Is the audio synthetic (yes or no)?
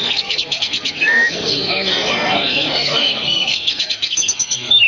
yes